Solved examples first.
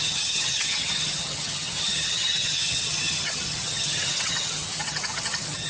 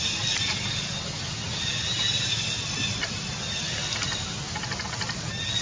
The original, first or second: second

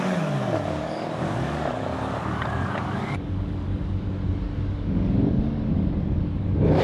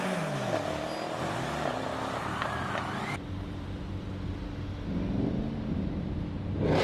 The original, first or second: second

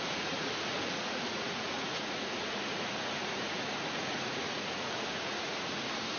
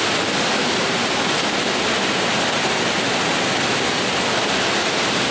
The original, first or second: second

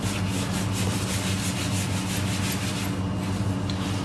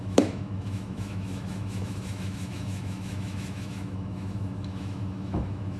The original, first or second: first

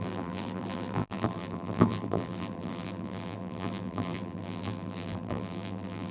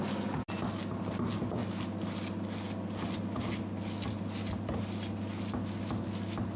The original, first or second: second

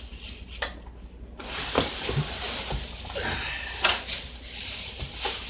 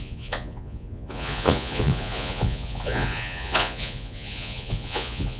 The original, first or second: first